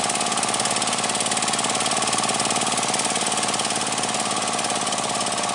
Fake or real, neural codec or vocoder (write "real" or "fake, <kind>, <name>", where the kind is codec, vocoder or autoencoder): real